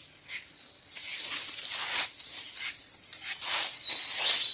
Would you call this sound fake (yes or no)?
no